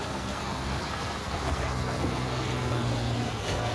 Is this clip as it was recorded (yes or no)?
no